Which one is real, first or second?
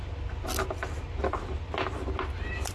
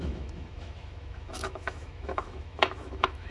first